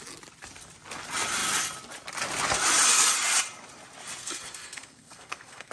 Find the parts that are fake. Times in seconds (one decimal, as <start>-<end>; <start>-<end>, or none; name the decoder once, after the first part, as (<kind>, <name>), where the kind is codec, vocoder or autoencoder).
4.2-5.7 (codec, SNAC)